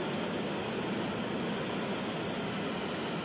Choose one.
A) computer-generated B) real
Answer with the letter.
B